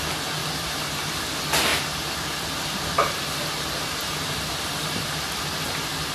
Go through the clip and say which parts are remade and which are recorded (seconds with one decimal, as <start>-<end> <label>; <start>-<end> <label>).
0.0-0.4 recorded; 0.4-1.1 remade; 1.1-1.7 recorded; 1.7-5.4 remade; 5.4-6.1 recorded